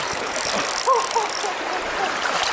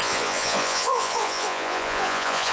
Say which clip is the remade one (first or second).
second